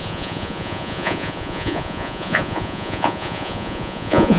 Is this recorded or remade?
remade